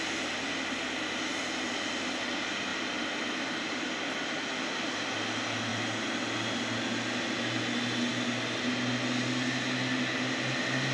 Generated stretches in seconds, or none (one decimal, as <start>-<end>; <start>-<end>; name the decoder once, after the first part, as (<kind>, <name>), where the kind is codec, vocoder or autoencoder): 2.7-3.8 (vocoder, BigVGAN v2)